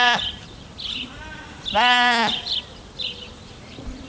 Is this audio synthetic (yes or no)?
yes